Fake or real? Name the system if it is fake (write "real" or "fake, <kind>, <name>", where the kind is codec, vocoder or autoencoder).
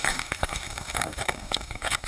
fake, codec, DAC